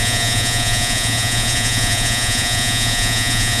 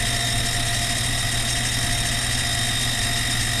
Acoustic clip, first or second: second